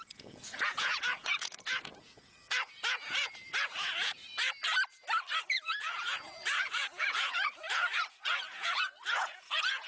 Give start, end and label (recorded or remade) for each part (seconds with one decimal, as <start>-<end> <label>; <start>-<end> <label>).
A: 0.0-4.2 remade; 4.2-5.4 recorded; 5.4-9.9 remade